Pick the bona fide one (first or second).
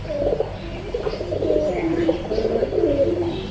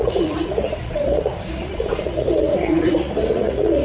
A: first